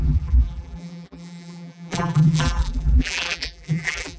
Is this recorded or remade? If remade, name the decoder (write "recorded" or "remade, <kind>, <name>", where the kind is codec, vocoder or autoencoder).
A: remade, vocoder, BigVGAN v2